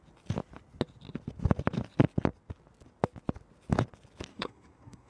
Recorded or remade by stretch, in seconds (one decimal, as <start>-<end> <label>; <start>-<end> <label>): 0.0-4.3 recorded; 4.3-5.1 remade